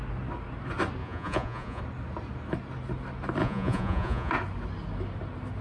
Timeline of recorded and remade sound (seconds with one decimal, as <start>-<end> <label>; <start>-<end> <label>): 0.0-1.0 recorded; 1.0-1.8 remade; 1.8-3.4 recorded; 3.4-4.3 remade; 4.3-5.6 recorded